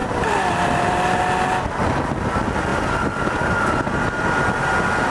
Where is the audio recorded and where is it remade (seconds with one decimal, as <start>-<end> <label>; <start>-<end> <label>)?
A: 0.0-1.2 remade; 1.2-5.1 recorded